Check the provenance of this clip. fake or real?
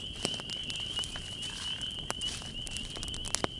real